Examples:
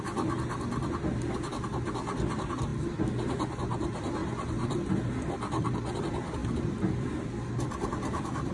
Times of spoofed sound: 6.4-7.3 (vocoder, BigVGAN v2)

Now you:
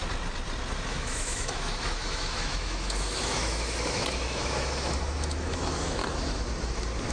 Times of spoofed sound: 0.9-6.0 (autoencoder, DAC-VAE)

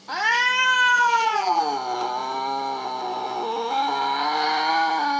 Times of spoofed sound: 0.9-1.6 (vocoder, BigVGAN v2)